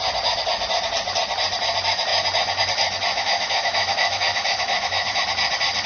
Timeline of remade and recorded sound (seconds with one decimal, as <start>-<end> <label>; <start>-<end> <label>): 0.0-3.1 recorded; 3.1-5.2 remade; 5.2-5.9 recorded